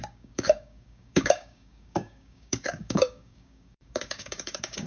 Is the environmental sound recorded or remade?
remade